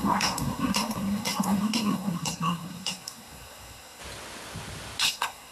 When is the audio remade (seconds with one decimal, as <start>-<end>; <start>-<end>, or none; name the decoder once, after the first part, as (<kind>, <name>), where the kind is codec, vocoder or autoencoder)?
0.0-4.0 (codec, SNAC); 5.0-5.5